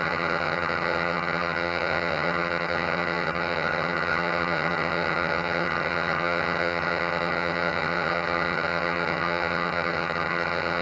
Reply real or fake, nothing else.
fake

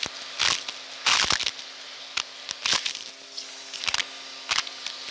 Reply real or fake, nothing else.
real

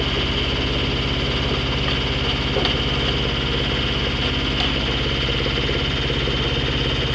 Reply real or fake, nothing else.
real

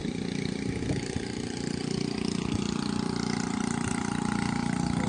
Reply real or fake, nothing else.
real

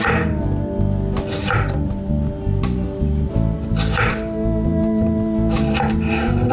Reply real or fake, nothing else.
real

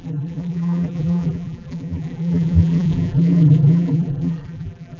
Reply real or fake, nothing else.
fake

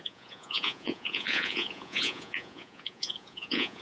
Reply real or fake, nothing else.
fake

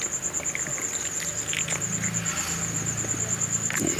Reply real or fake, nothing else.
real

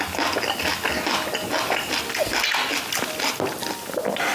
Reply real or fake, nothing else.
real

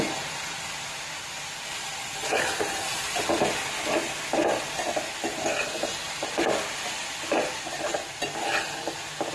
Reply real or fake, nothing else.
real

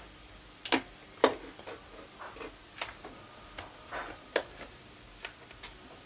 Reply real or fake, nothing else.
real